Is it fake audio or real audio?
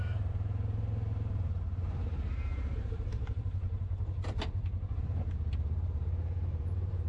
fake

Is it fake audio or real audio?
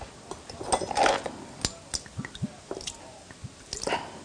real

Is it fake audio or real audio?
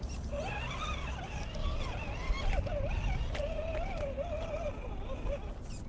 real